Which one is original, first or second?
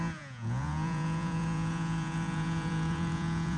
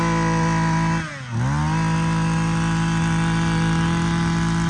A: second